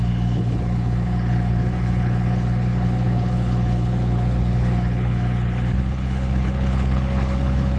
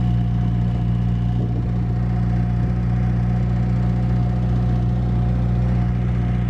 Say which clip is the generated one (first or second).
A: first